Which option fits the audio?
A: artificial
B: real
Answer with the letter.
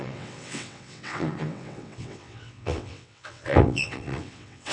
A